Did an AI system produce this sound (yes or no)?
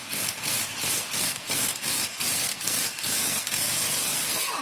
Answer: yes